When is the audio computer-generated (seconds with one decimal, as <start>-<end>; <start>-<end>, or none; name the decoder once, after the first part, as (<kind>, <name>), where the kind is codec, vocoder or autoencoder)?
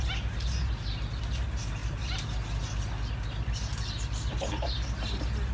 none